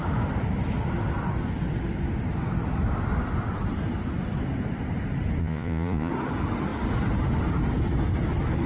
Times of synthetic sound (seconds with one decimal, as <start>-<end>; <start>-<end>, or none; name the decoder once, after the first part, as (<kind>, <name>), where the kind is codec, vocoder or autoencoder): 5.4-6.1 (vocoder, Vocos)